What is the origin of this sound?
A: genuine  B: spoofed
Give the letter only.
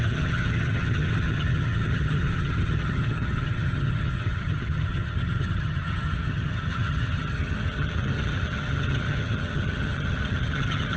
B